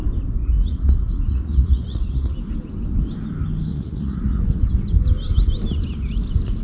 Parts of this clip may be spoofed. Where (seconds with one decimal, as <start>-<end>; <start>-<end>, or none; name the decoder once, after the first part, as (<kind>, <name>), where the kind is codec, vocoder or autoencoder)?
0.4-2.4 (vocoder, Vocos); 3.7-4.4